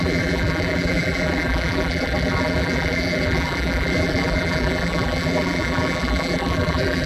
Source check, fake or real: fake